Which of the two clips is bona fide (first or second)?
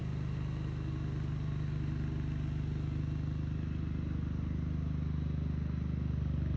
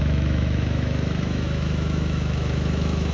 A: first